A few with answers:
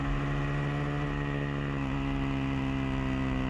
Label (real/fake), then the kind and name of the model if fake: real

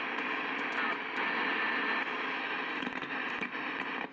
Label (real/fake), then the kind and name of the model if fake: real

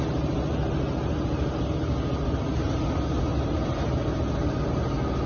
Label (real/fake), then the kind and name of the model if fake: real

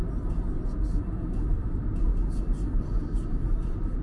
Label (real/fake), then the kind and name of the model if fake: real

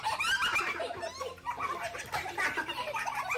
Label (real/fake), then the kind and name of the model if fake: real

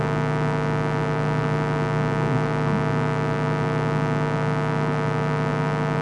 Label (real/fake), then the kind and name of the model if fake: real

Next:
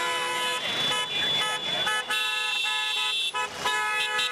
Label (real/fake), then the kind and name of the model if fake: real